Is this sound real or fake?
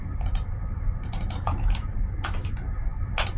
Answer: real